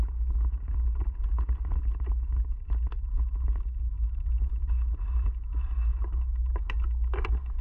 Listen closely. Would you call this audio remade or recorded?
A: recorded